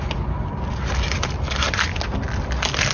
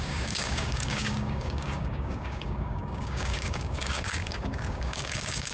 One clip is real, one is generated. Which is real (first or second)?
first